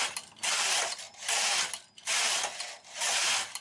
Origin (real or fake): real